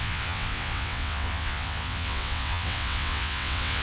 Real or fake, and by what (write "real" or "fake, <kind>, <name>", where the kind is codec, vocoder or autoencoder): fake, vocoder, WaveNeXt